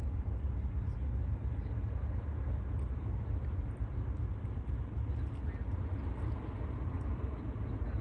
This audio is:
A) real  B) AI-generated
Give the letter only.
A